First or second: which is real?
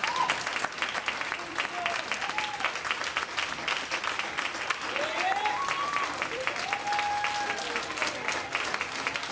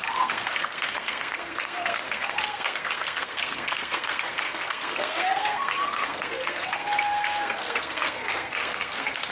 first